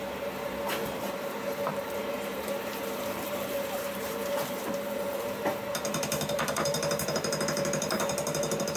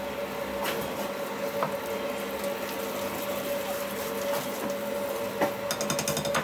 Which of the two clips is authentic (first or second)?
second